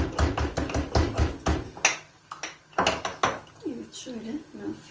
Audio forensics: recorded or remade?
recorded